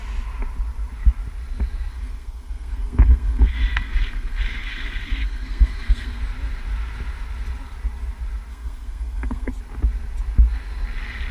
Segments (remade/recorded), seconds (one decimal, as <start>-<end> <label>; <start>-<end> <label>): 0.0-1.9 recorded; 1.9-6.2 remade; 6.2-8.5 recorded; 8.5-9.5 remade; 9.5-11.3 recorded